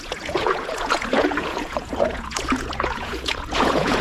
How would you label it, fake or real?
fake